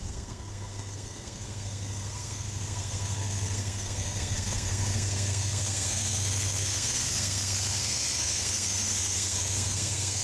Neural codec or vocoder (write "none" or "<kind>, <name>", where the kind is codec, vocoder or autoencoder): codec, SNAC